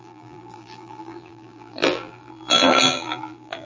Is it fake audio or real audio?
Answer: fake